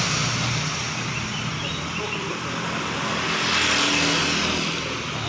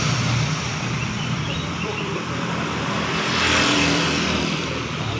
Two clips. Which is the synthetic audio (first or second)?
second